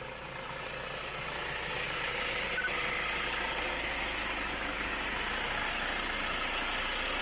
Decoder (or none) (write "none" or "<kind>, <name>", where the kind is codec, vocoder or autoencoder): none